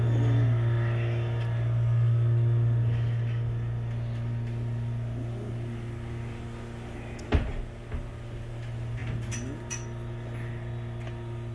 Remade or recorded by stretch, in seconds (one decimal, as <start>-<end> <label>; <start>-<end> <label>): 0.0-11.5 recorded